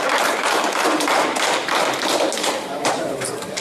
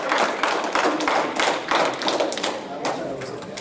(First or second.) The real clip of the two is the second